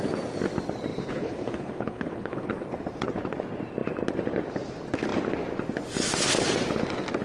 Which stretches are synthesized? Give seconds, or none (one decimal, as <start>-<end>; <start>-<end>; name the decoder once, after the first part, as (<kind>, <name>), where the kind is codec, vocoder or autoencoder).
0.9-2.5 (codec, HILCodec)